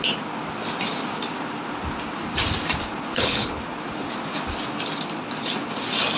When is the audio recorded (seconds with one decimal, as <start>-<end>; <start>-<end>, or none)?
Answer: 0.0-3.1; 3.6-6.2

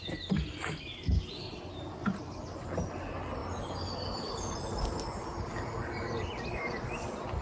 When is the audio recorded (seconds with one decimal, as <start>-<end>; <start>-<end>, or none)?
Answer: 0.0-7.4

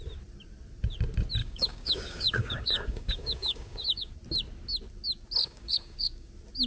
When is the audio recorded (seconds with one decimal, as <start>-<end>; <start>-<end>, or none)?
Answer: 0.0-1.4; 4.1-5.4; 6.3-6.7

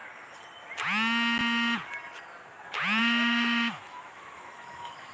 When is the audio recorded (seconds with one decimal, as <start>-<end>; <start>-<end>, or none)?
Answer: 0.0-3.0